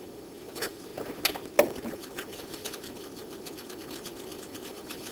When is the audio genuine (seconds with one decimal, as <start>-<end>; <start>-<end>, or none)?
0.9-1.9